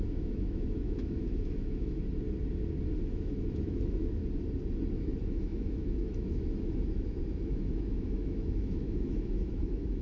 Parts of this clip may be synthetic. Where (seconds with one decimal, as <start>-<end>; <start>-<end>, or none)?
0.0-2.0; 3.1-4.2; 4.9-10.0